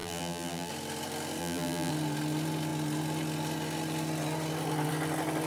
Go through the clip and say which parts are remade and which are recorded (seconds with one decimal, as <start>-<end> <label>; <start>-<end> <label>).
0.0-0.7 remade; 0.7-1.4 recorded; 1.4-1.9 remade; 1.9-5.5 recorded